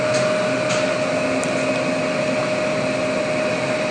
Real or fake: real